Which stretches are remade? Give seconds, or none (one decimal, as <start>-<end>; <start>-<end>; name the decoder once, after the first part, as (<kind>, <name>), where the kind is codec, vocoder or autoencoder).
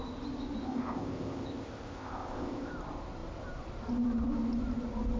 0.6-2.7 (codec, ZipCodec)